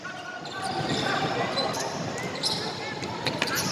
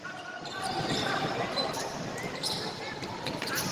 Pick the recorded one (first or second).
first